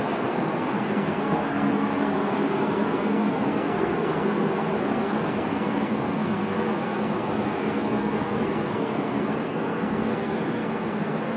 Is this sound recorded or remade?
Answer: remade